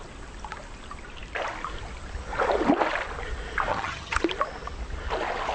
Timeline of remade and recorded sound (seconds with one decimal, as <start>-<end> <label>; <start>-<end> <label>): 0.0-3.7 recorded; 3.7-4.2 remade; 4.2-5.5 recorded

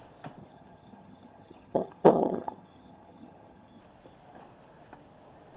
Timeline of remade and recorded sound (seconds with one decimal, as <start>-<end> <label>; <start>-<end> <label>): 0.0-0.4 recorded; 0.4-3.8 remade; 3.8-5.6 recorded

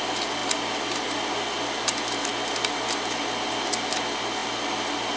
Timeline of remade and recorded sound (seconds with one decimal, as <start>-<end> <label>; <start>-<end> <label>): 0.0-5.2 recorded